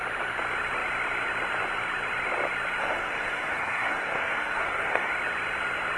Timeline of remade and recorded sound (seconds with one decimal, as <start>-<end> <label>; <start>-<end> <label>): 0.0-2.8 recorded; 2.8-5.1 remade; 5.1-6.0 recorded